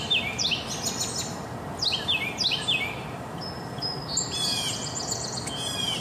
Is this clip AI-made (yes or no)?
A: no